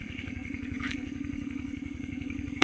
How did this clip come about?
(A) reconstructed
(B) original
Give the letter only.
A